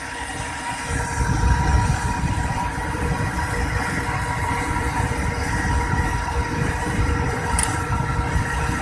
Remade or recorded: remade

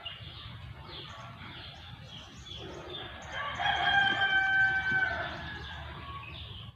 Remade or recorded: recorded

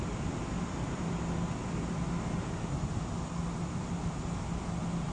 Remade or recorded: recorded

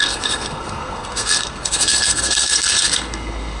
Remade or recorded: remade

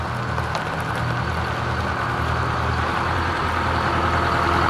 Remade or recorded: recorded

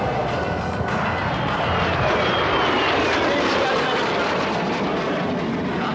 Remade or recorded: recorded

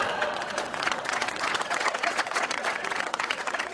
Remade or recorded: remade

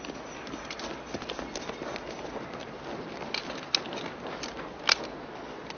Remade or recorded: recorded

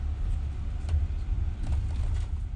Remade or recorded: recorded